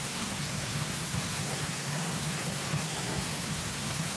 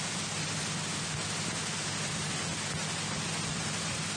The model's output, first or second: first